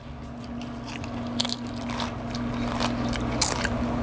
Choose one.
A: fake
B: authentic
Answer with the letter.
B